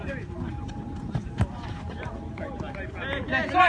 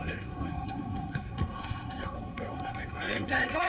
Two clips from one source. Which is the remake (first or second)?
second